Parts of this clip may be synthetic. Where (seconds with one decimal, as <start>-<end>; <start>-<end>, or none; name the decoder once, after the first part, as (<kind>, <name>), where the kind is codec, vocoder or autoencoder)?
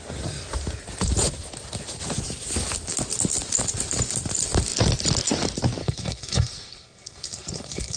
5.8-8.0 (codec, SNAC)